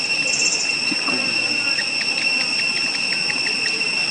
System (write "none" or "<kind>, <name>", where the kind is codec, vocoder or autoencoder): none